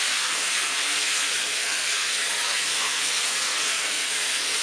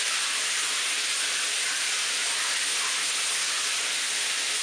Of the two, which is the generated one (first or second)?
first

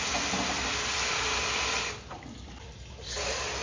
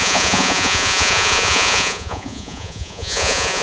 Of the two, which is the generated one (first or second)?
second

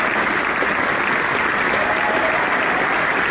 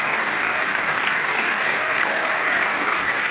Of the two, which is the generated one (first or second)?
second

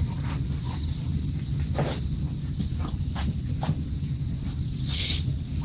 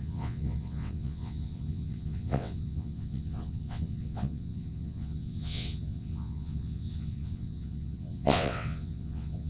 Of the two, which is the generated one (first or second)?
second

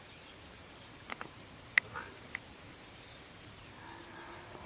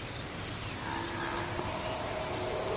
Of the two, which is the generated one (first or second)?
first